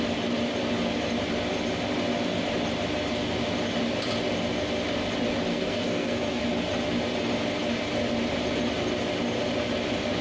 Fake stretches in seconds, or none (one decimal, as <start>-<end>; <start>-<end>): 5.5-6.4